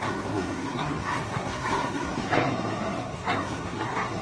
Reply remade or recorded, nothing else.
remade